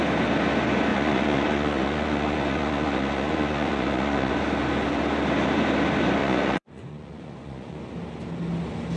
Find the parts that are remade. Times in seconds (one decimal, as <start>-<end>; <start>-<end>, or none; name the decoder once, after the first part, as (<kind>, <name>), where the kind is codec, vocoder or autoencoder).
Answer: 0.9-4.3 (vocoder, Vocos); 6.2-7.8